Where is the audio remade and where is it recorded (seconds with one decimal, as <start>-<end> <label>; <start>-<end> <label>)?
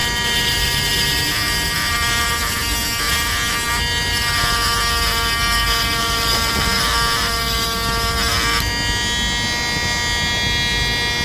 0.0-1.2 remade; 1.2-6.0 recorded; 6.0-7.4 remade; 7.4-11.2 recorded